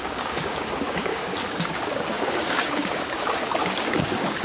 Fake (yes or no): yes